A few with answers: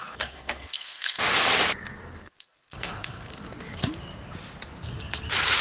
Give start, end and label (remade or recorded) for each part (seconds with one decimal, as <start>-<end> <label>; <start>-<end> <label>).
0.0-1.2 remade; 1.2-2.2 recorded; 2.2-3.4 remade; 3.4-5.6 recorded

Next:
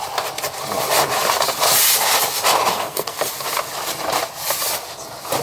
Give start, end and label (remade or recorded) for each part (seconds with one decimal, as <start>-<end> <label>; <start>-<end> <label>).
0.0-2.7 recorded; 2.7-3.3 remade; 3.3-5.4 recorded

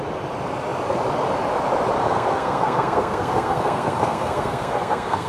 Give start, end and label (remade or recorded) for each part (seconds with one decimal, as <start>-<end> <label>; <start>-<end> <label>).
0.0-2.0 recorded; 2.0-5.3 remade

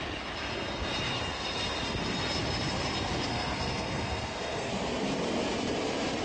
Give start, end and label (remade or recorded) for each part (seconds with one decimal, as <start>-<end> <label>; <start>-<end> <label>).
0.0-3.3 recorded; 3.3-4.7 remade; 4.7-6.2 recorded

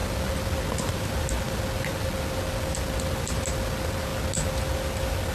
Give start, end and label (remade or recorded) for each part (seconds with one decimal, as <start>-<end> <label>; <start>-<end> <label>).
0.0-5.3 recorded

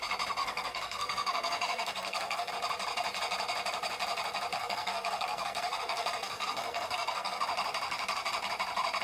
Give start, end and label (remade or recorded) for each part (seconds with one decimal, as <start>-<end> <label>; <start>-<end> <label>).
0.0-0.4 recorded; 0.4-2.5 remade; 2.5-4.5 recorded; 4.5-7.4 remade; 7.4-9.0 recorded

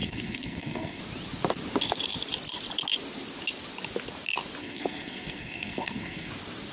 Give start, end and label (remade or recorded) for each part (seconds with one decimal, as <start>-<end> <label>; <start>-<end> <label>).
0.0-1.0 remade; 1.0-4.6 recorded; 4.6-6.3 remade; 6.3-6.7 recorded

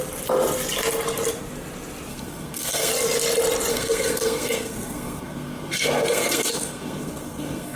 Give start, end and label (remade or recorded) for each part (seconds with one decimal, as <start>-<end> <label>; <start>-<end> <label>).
0.0-2.1 recorded; 2.1-2.9 remade; 2.9-3.7 recorded; 3.7-7.8 remade